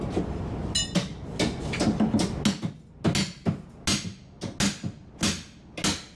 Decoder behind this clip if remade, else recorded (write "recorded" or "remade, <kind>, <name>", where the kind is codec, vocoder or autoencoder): recorded